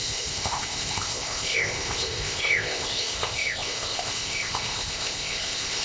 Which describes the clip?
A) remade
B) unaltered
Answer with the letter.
A